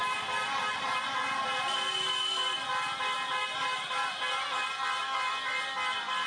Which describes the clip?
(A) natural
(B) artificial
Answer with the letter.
A